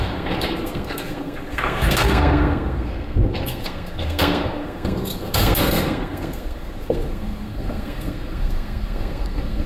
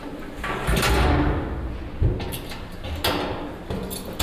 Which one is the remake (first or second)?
first